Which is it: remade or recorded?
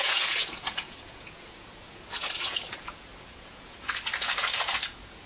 remade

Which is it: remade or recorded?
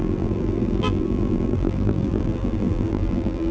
remade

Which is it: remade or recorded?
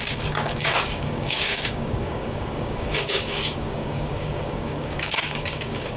remade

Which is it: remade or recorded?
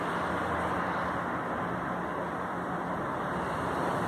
recorded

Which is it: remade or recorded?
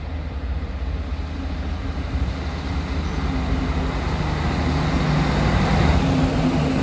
recorded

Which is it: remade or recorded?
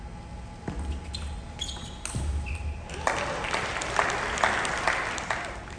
recorded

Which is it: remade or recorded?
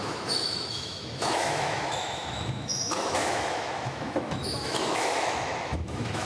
remade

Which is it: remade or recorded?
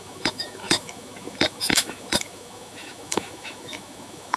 remade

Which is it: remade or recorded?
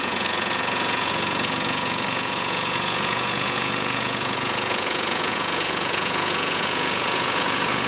remade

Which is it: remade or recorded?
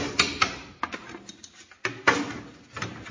recorded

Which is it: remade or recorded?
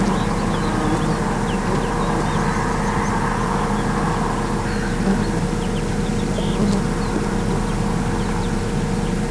recorded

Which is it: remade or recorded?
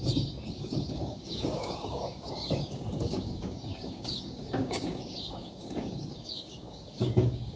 remade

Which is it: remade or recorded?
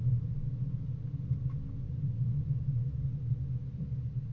recorded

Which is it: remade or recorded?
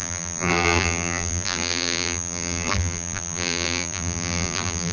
remade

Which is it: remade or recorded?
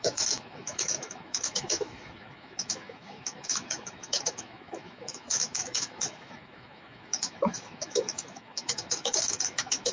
remade